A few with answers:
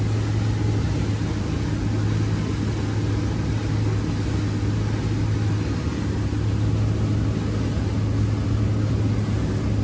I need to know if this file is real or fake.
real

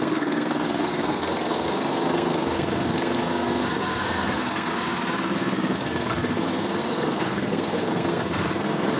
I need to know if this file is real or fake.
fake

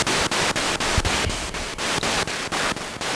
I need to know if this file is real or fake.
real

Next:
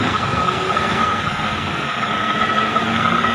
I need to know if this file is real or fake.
fake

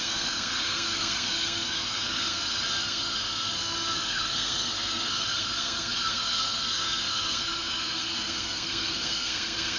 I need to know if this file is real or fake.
fake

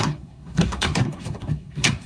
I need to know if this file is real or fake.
fake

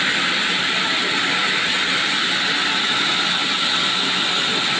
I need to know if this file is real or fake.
real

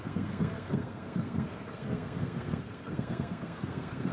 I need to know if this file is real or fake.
fake